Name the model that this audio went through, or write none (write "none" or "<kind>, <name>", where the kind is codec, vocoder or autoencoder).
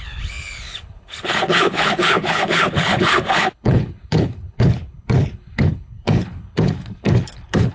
codec, HILCodec